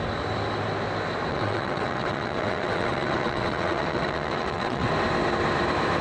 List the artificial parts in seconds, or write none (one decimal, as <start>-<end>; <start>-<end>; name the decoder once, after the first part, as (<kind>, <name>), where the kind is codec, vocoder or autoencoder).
1.3-4.9 (vocoder, WaveNeXt)